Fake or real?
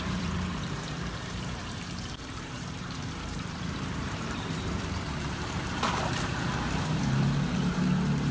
fake